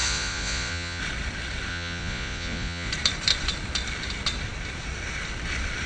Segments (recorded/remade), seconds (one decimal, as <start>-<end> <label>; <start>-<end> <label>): 0.0-1.0 remade; 1.0-1.7 recorded; 1.7-2.9 remade; 2.9-5.9 recorded